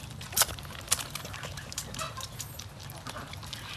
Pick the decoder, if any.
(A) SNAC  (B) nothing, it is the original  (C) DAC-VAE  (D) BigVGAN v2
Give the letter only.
B